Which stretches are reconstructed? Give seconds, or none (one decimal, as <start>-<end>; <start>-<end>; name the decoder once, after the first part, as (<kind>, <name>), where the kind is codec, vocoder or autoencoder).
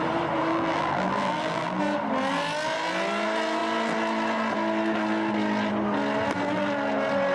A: 0.5-1.8 (vocoder, BigVGAN v2)